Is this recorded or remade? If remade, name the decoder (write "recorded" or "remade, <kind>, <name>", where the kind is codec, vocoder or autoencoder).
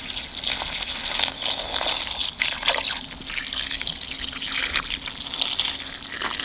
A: recorded